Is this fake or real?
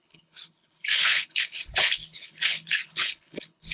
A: fake